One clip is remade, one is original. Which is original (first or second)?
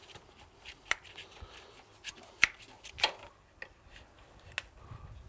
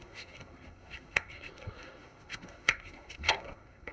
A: first